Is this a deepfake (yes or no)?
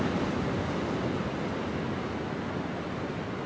no